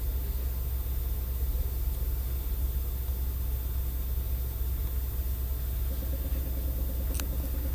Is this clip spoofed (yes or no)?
no